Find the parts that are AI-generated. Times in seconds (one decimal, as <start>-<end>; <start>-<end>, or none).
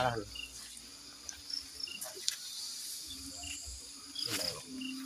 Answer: none